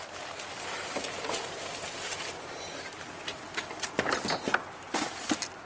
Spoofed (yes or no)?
no